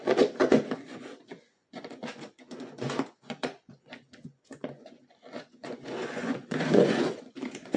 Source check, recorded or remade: remade